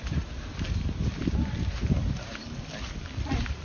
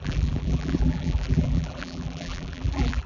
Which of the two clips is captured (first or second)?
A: first